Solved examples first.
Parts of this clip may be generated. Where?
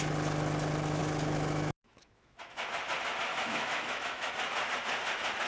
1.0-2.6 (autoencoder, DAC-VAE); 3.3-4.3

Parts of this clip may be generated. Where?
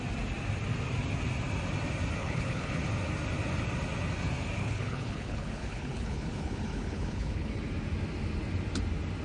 2.2-2.8 (codec, HILCodec); 4.6-7.5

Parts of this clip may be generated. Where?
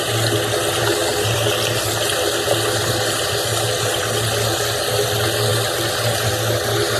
none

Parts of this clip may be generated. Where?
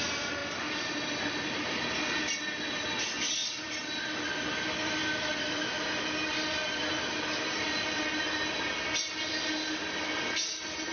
3.4-4.3 (vocoder, BigVGAN v2); 5.0-5.6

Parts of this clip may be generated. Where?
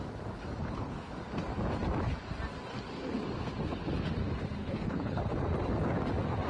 0.6-1.1 (codec, HILCodec); 4.6-5.2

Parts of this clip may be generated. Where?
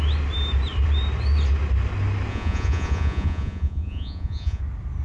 2.3-4.6 (vocoder, Vocos)